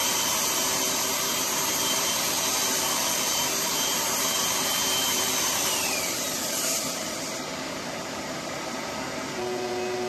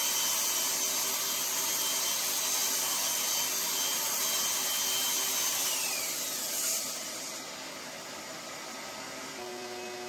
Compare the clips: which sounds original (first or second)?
second